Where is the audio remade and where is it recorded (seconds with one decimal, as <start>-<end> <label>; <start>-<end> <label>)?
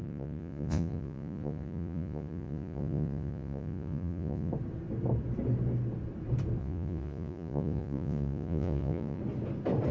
0.0-4.5 remade; 4.5-6.6 recorded; 6.6-9.2 remade; 9.2-9.9 recorded